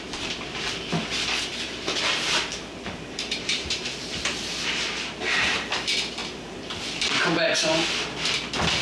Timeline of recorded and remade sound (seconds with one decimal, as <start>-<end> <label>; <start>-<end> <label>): 0.0-1.5 recorded; 1.5-5.7 remade; 5.7-6.2 recorded; 6.2-6.7 remade; 6.7-8.8 recorded